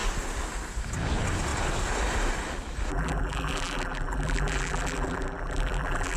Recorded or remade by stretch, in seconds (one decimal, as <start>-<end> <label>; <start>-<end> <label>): 0.0-2.9 recorded; 2.9-6.2 remade